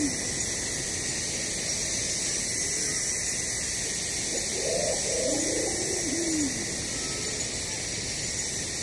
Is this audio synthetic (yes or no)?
no